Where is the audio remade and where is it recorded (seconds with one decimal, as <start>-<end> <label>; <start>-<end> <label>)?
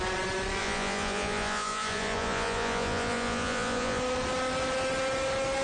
0.0-0.6 recorded; 0.6-4.0 remade; 4.0-5.6 recorded